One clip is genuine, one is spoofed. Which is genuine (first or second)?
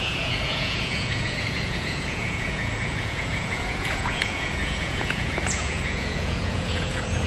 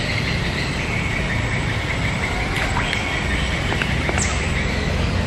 second